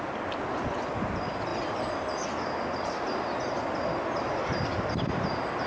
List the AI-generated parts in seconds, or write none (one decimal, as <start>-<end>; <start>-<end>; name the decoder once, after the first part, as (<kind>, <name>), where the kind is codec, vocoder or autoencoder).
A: none